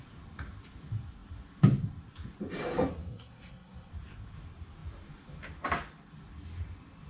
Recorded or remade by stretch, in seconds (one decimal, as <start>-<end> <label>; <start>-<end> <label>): 0.0-2.9 recorded; 2.9-3.9 remade; 3.9-7.1 recorded